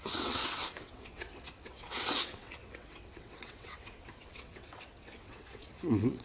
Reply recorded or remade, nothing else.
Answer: remade